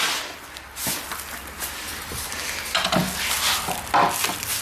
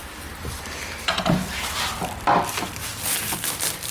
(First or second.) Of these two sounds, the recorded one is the first